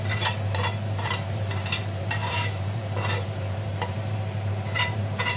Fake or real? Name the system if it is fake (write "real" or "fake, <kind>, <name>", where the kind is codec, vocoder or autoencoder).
fake, vocoder, BigVGAN v2